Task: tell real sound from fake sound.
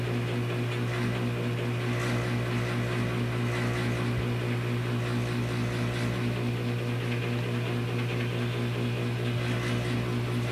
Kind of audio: real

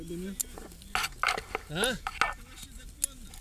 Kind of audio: real